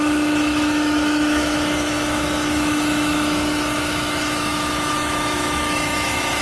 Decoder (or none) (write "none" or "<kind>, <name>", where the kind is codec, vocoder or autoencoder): autoencoder, DAC-VAE